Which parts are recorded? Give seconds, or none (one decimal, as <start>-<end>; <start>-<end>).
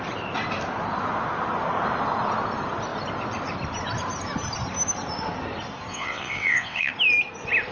0.0-5.9; 6.9-7.7